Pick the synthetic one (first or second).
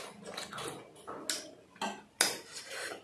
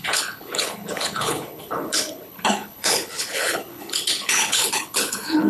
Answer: second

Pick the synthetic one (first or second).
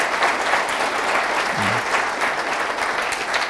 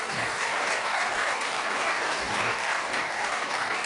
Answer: second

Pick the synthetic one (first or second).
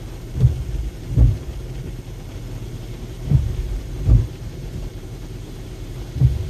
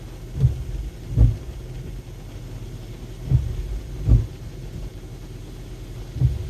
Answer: first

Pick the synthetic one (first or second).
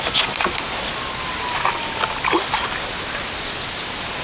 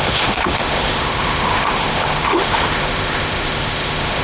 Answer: second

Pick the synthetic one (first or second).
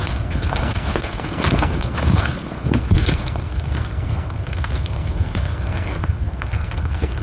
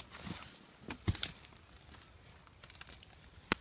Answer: first